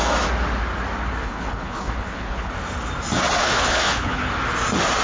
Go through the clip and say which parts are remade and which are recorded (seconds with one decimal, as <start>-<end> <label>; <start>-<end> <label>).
0.0-1.2 recorded; 1.2-2.5 remade; 2.5-3.4 recorded; 3.4-4.3 remade; 4.3-5.0 recorded